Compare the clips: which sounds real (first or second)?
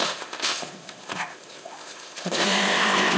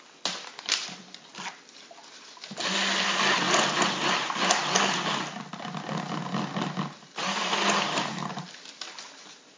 second